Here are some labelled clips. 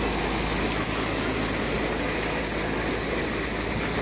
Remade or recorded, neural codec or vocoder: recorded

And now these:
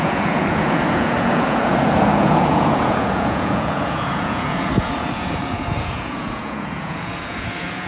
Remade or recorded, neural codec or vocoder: remade, vocoder, Vocos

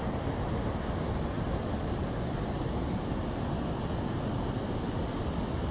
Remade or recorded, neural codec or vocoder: recorded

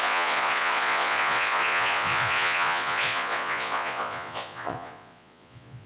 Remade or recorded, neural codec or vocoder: remade, vocoder, Vocos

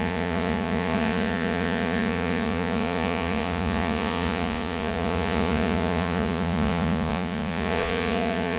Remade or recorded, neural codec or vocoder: remade, vocoder, Vocos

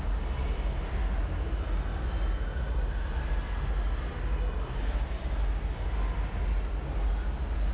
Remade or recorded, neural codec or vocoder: recorded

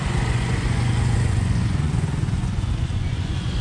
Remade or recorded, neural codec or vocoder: remade, vocoder, Vocos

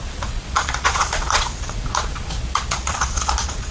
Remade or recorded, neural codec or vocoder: remade, vocoder, Vocos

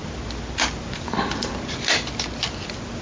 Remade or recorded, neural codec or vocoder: recorded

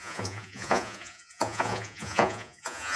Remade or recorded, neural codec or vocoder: remade, vocoder, Vocos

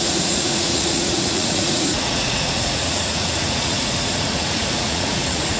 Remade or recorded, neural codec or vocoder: remade, vocoder, Vocos